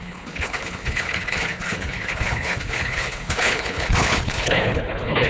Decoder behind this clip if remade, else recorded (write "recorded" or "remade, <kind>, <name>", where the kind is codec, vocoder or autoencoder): remade, codec, HILCodec